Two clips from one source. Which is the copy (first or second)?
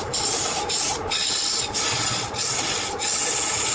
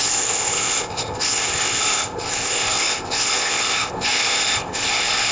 second